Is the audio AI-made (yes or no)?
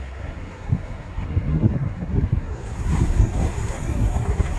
yes